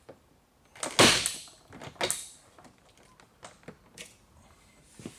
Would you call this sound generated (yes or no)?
no